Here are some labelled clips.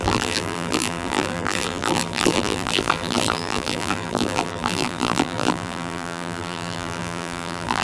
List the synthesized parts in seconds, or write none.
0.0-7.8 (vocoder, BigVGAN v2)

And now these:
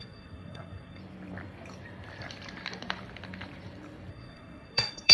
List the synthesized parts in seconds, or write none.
0.0-1.0 (codec, SNAC); 4.1-5.1

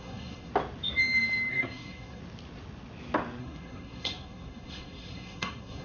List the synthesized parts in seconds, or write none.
0.0-0.5 (codec, SNAC); 1.5-2.2; 3.4-5.8

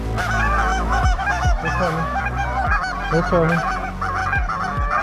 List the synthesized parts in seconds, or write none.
0.7-2.2 (autoencoder, DAC-VAE)